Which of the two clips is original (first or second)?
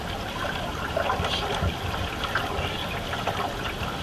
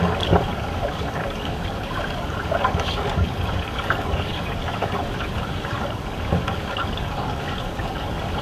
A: first